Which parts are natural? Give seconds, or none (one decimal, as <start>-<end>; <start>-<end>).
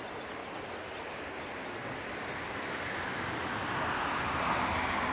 0.0-2.2; 4.0-5.1